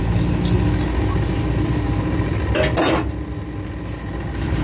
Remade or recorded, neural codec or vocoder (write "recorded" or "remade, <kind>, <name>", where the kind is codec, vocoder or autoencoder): recorded